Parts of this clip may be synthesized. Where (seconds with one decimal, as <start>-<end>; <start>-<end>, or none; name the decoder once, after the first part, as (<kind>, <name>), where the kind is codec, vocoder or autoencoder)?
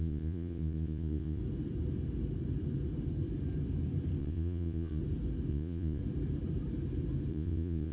0.0-1.4 (vocoder, Vocos); 4.2-5.0; 5.5-6.0; 7.3-7.9